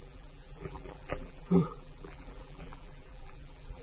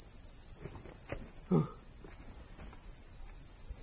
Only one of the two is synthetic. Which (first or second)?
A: first